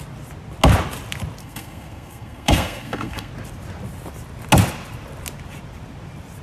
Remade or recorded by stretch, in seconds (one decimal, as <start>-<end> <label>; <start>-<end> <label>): 0.0-1.4 recorded; 1.4-3.3 remade; 3.3-6.4 recorded